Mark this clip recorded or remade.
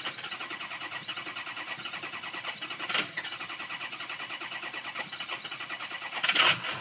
recorded